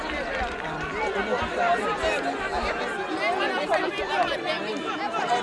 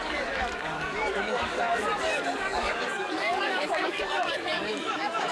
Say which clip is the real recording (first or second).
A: first